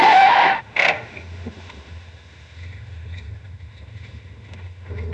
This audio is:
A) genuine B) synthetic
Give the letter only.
B